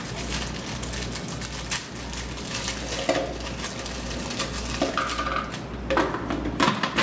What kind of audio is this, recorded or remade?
recorded